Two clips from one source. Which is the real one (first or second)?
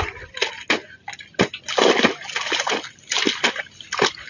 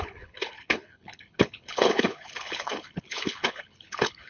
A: first